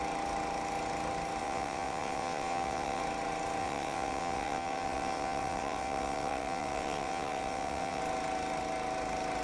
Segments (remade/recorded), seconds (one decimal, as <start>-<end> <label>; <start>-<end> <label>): 0.0-1.4 recorded; 1.4-3.0 remade; 3.0-3.6 recorded; 3.6-8.0 remade; 8.0-9.4 recorded